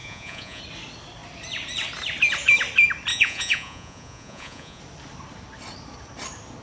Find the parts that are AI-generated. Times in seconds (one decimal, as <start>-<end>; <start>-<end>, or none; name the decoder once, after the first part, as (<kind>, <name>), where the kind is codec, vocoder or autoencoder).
0.0-0.6 (vocoder, Vocos); 3.1-4.8